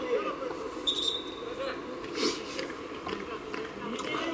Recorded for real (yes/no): yes